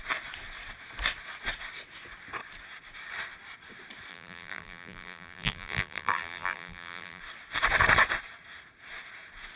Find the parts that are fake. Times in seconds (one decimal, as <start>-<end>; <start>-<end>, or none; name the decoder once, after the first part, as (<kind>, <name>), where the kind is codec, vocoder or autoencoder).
4.1-7.2 (vocoder, BigVGAN v2)